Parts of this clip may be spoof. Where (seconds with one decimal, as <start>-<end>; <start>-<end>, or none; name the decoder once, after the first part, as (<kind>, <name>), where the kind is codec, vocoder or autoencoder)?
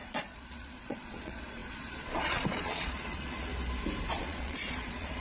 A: 0.0-3.5 (vocoder, Vocos); 4.1-5.2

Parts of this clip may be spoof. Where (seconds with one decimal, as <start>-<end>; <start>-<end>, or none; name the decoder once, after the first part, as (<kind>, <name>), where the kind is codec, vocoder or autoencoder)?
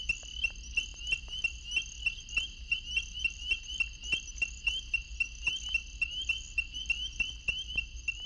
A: none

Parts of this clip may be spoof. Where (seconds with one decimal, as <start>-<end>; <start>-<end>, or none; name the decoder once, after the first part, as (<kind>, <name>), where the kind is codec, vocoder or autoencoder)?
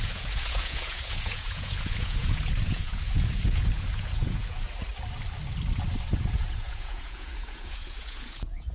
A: 0.0-4.9 (vocoder, Vocos); 6.1-8.7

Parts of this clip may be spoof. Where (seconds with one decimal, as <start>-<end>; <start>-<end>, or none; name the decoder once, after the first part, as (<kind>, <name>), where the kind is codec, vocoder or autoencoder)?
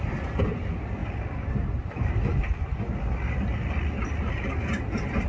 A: none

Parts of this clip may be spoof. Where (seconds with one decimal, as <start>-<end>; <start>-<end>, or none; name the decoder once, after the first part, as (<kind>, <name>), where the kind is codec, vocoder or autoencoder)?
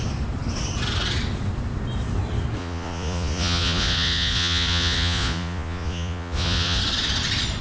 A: 2.6-6.8 (vocoder, Vocos)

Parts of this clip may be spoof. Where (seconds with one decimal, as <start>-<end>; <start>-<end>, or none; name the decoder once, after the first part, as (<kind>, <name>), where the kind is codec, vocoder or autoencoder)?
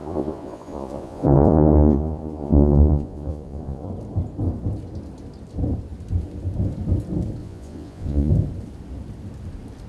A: 0.0-3.9 (vocoder, Vocos); 7.4-8.3